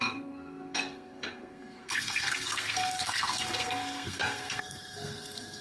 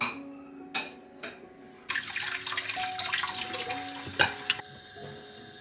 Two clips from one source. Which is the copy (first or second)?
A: first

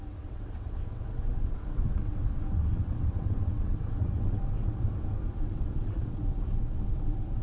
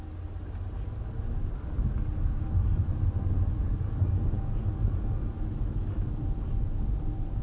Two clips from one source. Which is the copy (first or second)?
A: first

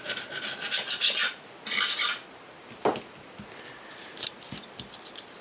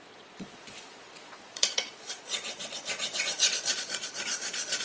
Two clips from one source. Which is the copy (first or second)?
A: second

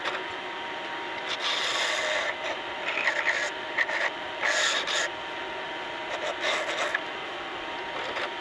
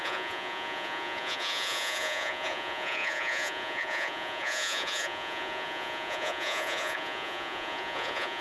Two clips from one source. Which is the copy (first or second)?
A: second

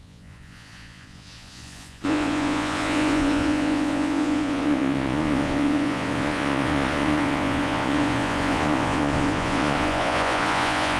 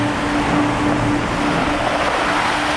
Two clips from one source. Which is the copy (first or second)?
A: first